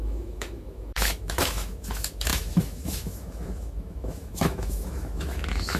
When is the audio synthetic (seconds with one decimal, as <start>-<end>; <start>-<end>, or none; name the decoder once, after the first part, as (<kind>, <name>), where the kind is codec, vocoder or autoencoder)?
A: 0.0-5.8 (autoencoder, DAC-VAE)